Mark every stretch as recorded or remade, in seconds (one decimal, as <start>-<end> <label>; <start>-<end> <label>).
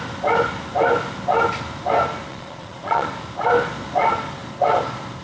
0.0-2.3 recorded; 2.3-3.1 remade; 3.1-5.2 recorded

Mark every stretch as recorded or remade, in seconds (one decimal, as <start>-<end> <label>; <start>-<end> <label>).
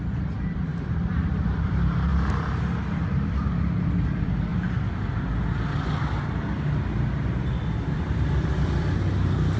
0.0-2.1 remade; 2.1-3.9 recorded; 3.9-4.5 remade; 4.5-7.4 recorded; 7.4-9.6 remade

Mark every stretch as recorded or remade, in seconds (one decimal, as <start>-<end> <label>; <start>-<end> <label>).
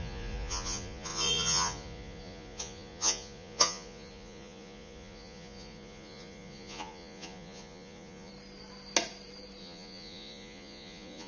0.0-8.3 remade; 8.3-9.6 recorded; 9.6-11.3 remade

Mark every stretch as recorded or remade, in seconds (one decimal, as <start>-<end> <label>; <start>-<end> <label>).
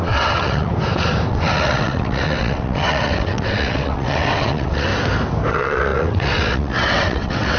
0.0-0.7 remade; 0.7-1.3 recorded; 1.3-4.9 remade; 4.9-5.5 recorded; 5.5-7.6 remade